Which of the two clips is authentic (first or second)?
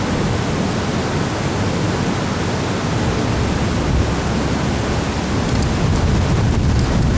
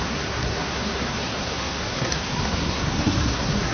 first